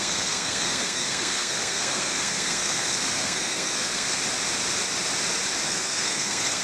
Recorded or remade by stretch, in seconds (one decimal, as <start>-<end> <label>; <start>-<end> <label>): 0.0-4.2 remade; 4.2-5.7 recorded; 5.7-6.6 remade